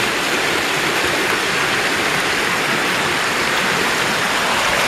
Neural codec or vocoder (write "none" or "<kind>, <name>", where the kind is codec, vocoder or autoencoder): none